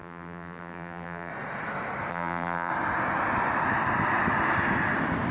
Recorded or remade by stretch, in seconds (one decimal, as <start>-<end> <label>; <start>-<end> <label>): 0.0-1.3 remade; 1.3-2.1 recorded; 2.1-2.7 remade; 2.7-5.3 recorded